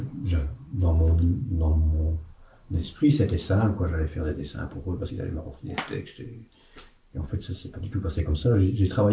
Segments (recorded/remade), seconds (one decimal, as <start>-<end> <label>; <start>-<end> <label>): 0.0-2.8 recorded; 2.8-5.1 remade; 5.1-7.3 recorded; 7.3-8.2 remade; 8.2-9.1 recorded